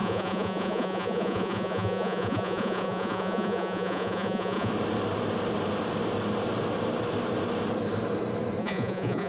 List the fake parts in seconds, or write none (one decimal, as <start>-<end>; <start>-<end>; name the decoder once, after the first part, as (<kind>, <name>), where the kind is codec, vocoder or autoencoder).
0.0-4.7 (vocoder, Vocos); 8.6-9.3